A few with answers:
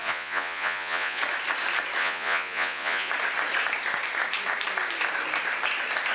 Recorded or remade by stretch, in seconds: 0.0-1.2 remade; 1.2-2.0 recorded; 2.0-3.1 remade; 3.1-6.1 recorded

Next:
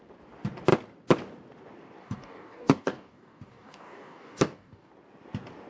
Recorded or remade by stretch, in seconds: 0.0-2.0 recorded; 2.0-4.9 remade; 4.9-5.7 recorded

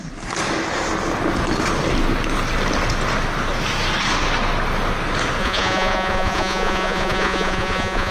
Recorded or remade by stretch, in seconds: 0.0-5.4 recorded; 5.4-8.1 remade